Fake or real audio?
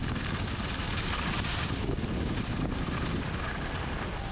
real